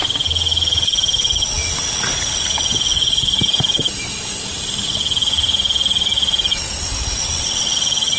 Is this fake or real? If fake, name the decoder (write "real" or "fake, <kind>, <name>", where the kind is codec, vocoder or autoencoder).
real